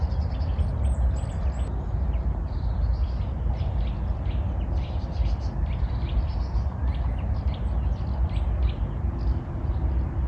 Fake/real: real